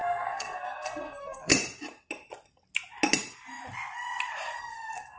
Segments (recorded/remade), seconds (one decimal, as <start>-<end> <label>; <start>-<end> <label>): 0.0-1.5 remade; 1.5-4.6 recorded; 4.6-5.2 remade